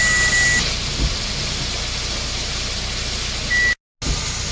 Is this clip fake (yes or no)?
no